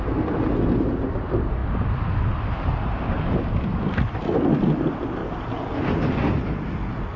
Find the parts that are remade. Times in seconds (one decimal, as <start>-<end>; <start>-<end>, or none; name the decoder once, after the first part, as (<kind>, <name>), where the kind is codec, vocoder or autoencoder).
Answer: none